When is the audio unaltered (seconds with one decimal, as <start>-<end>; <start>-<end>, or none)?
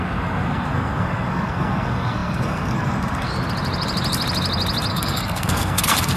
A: 3.3-4.9